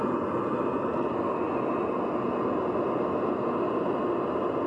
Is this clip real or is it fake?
real